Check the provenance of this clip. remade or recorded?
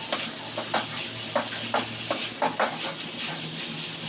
recorded